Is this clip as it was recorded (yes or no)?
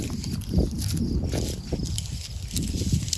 yes